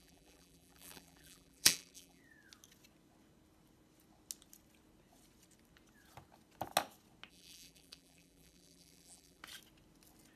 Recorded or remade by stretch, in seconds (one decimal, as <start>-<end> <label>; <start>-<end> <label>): 0.0-2.2 remade; 2.2-7.3 recorded; 7.3-9.4 remade; 9.4-10.4 recorded